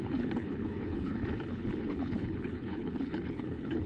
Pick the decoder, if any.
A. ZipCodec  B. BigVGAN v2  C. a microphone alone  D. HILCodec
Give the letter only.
D